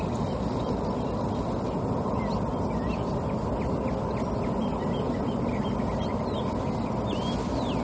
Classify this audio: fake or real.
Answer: real